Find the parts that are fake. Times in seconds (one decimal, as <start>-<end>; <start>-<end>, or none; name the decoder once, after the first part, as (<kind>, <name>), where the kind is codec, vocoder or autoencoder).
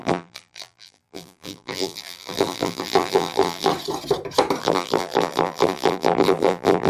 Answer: 0.0-3.7 (vocoder, BigVGAN v2); 4.6-6.9